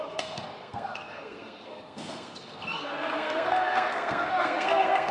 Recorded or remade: remade